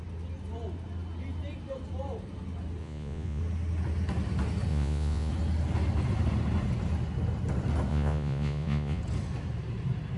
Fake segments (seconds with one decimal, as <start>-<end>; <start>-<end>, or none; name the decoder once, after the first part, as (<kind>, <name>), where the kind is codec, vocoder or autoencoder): 2.8-3.4 (vocoder, Vocos); 4.7-5.3; 7.9-9.0